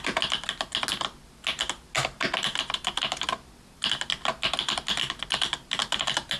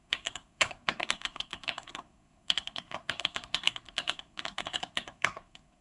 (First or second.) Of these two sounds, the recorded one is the first